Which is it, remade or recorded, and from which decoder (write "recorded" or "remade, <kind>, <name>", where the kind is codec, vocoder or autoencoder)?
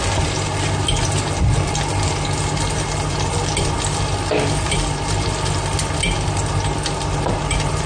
recorded